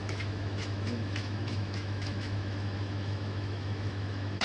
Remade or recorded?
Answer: remade